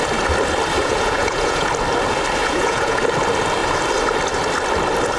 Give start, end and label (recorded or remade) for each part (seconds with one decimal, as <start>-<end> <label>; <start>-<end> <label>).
0.0-0.8 recorded; 0.8-1.7 remade; 1.7-2.4 recorded; 2.4-3.0 remade; 3.0-5.2 recorded